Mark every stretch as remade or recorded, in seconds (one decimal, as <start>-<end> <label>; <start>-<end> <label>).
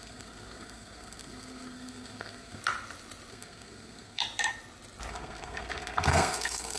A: 0.0-2.6 remade; 2.6-3.3 recorded; 3.3-4.2 remade; 4.2-5.1 recorded; 5.1-6.8 remade